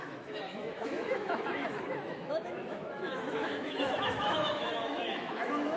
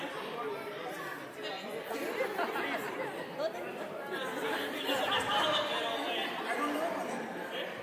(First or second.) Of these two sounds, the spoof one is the first